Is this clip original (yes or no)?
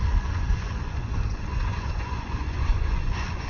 no